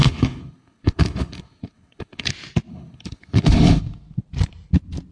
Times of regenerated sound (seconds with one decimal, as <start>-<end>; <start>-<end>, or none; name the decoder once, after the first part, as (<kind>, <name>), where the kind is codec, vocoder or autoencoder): 0.0-2.3 (codec, HILCodec); 2.7-3.8